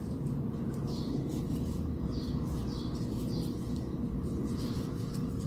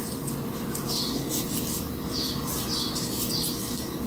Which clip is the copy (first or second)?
first